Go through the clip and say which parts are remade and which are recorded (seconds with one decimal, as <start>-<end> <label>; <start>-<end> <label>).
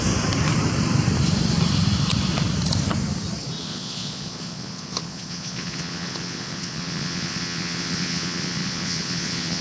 0.0-3.6 recorded; 3.6-9.6 remade